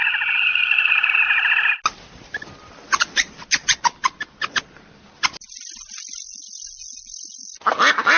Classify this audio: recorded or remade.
recorded